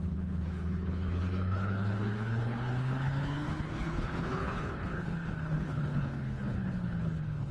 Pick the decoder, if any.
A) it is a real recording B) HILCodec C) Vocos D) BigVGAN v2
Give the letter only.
B